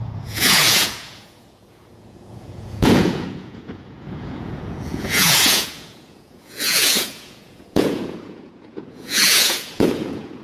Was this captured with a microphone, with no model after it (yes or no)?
no